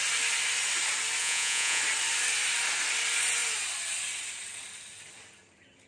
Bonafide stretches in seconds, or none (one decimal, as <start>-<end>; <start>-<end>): 0.0-1.2; 1.8-5.9